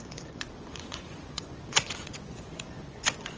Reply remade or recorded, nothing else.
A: remade